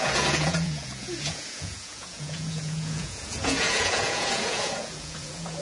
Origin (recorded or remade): remade